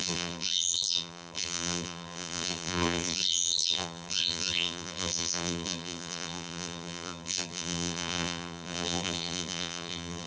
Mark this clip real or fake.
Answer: fake